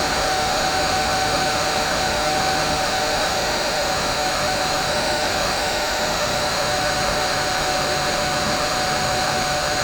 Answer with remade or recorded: remade